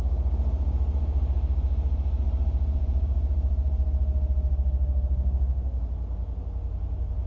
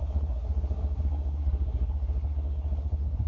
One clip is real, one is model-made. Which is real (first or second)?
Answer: first